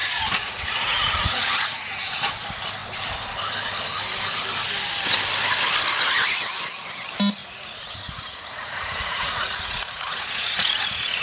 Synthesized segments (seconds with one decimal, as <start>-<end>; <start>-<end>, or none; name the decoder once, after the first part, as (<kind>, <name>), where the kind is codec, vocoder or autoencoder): 0.0-2.3 (vocoder, Vocos); 7.4-11.2